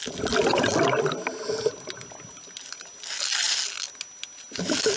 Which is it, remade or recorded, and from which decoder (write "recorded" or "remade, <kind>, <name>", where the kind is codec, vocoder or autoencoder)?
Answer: recorded